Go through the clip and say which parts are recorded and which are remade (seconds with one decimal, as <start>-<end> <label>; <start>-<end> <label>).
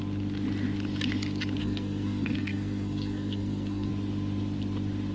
0.0-1.6 recorded; 1.6-3.9 remade; 3.9-5.1 recorded